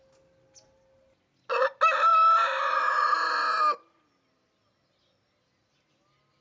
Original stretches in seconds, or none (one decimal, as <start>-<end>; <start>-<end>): 0.0-6.4